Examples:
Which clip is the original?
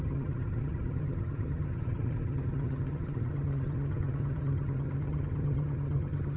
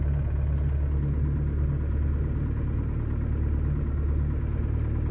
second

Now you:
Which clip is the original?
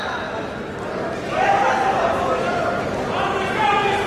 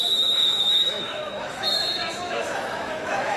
first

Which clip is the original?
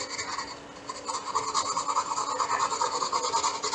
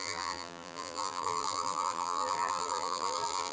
first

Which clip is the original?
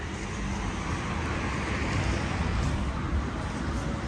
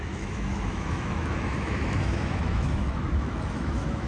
first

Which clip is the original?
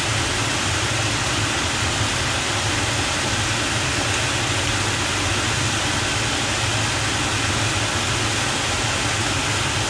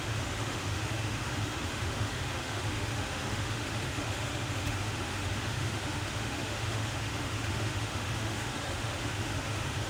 first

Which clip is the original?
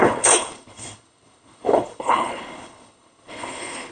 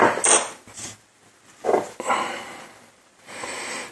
second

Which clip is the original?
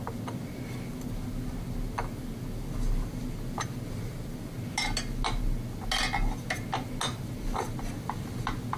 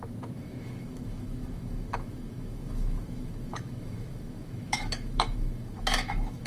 first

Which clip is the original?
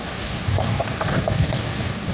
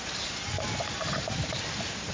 second